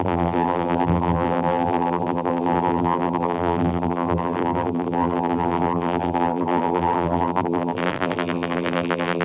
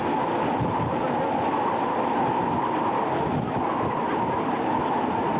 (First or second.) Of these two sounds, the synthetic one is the first